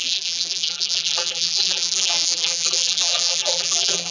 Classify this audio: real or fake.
fake